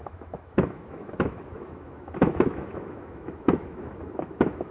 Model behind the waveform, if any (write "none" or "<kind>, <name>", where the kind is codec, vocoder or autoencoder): autoencoder, DAC-VAE